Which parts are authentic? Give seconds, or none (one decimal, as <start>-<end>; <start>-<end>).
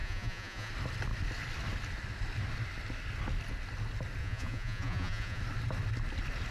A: 0.7-4.2; 5.4-6.5